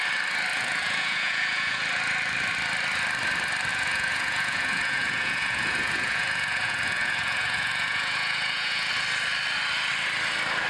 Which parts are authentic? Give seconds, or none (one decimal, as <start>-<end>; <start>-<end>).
0.0-0.5; 1.8-3.7; 8.9-10.7